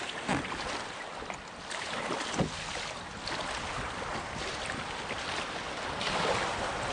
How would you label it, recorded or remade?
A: recorded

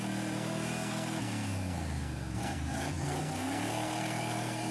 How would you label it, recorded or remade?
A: remade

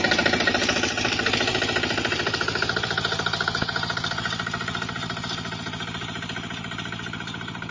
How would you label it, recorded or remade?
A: recorded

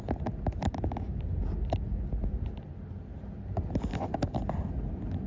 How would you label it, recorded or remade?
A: recorded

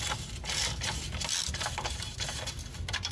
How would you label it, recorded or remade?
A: recorded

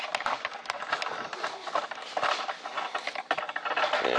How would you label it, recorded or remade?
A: recorded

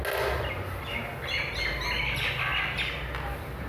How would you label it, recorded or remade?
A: recorded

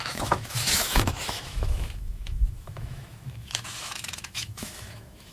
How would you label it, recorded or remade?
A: remade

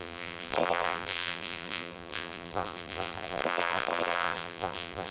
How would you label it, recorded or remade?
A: remade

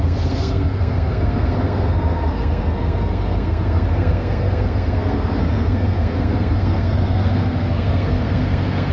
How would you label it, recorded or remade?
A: remade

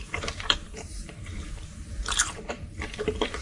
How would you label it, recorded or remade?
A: remade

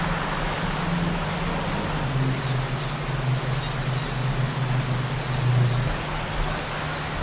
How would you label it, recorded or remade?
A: recorded